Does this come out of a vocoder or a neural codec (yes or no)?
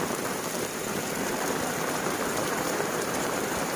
yes